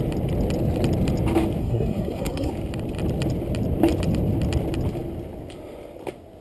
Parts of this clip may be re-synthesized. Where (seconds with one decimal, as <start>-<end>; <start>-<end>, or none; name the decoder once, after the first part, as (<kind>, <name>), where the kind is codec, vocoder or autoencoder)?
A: 1.6-2.5 (codec, SNAC)